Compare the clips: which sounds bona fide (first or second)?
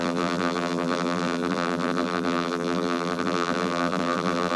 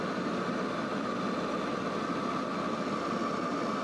second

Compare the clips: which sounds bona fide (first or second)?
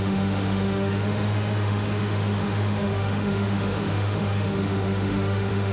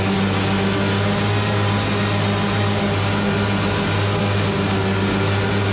second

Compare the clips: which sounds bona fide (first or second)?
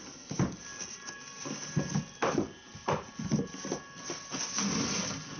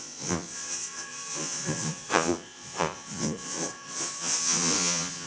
first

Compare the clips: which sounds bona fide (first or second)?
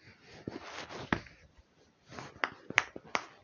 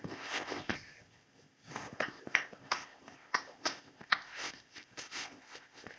first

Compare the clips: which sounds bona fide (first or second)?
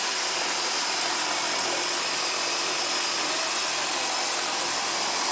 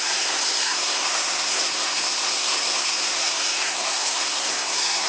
first